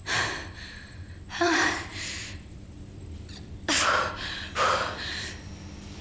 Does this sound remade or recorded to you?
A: remade